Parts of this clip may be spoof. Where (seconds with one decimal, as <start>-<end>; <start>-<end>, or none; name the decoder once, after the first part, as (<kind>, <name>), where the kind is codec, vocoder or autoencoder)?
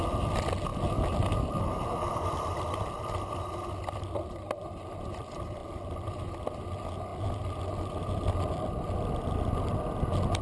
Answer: none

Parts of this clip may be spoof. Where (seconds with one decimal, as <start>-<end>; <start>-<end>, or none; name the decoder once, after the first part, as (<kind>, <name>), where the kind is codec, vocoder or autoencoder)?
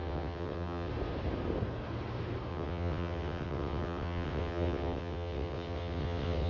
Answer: 0.0-0.9 (vocoder, WaveNeXt); 2.5-6.5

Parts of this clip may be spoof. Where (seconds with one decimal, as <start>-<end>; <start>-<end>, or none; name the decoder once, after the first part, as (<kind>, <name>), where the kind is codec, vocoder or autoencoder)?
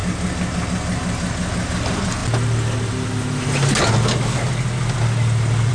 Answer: none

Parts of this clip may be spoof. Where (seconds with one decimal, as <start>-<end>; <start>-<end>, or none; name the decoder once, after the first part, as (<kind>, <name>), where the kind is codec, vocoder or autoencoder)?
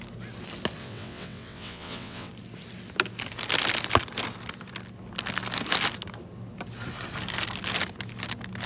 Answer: 0.8-2.3 (vocoder, WaveNeXt)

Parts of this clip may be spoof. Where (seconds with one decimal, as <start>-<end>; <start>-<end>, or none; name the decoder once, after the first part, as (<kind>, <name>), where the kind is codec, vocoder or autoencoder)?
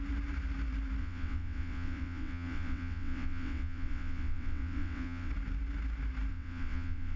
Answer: 1.0-5.3 (vocoder, WaveNeXt); 6.3-7.2